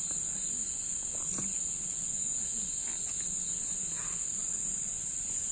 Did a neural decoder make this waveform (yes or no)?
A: no